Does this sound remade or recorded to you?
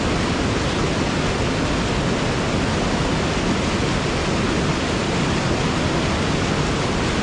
recorded